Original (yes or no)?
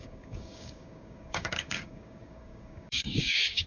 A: no